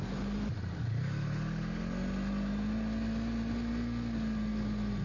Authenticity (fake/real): real